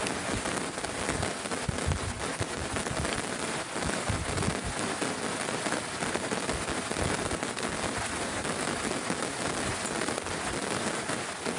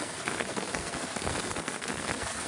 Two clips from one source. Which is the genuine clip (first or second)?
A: first